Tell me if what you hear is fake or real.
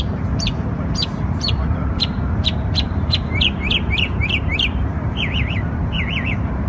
fake